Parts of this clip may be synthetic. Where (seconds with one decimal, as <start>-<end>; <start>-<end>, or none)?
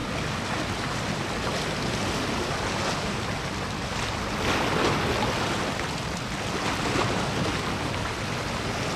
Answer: none